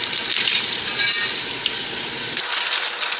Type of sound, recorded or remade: recorded